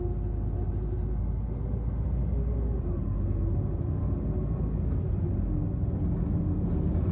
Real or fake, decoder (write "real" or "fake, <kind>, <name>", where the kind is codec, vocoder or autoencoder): real